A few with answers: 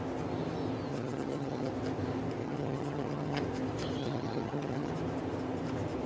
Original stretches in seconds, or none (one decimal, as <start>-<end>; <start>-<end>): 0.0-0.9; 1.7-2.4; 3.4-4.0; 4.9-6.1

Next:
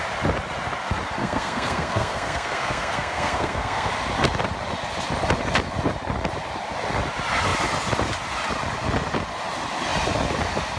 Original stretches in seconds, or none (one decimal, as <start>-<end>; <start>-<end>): 0.0-1.2; 3.9-10.8

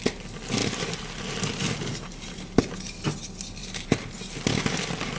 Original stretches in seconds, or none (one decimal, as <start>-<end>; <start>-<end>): 0.0-3.6; 4.1-5.2

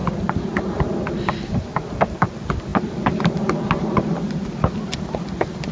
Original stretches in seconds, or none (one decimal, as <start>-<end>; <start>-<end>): 0.0-5.7

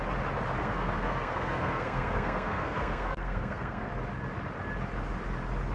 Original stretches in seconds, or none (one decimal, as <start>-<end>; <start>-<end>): 0.0-0.6; 3.9-5.7

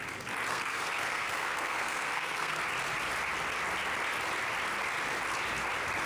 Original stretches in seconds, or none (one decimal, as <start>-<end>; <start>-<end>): 0.0-0.5; 2.6-6.1